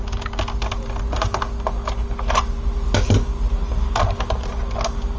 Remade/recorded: recorded